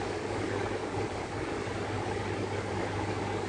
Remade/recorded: remade